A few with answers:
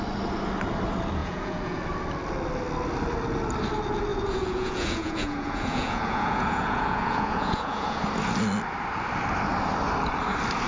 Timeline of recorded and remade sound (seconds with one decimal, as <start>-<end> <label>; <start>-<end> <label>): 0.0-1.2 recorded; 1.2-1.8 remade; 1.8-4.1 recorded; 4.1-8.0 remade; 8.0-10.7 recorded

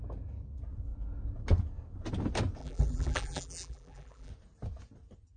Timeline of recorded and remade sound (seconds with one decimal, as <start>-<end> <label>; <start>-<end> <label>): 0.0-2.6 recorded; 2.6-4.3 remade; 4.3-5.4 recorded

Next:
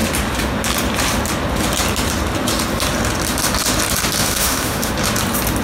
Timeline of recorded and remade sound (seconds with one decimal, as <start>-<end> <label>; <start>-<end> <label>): 0.0-4.2 recorded; 4.2-4.9 remade; 4.9-5.6 recorded